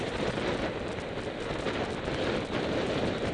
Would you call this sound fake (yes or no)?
no